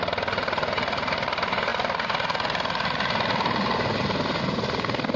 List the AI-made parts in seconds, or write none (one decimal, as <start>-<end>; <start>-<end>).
none